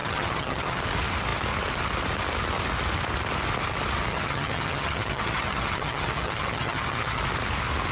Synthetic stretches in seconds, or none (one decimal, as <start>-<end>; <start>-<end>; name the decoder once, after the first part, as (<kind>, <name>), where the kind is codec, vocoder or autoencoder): 0.0-0.8 (vocoder, HiFi-GAN); 4.1-7.2